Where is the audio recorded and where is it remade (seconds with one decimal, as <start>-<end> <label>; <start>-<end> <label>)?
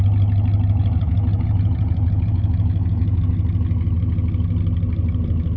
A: 0.0-0.8 recorded; 0.8-3.3 remade; 3.3-5.6 recorded